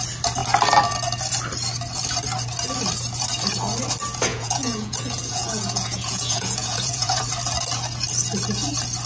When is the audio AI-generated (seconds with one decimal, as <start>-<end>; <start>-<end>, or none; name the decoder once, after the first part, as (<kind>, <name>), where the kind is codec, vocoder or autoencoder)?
4.3-7.2 (vocoder, Vocos)